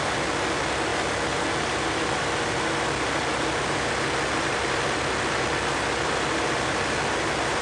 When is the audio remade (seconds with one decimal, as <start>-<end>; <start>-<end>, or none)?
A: none